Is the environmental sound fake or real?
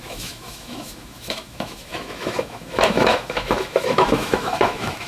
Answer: fake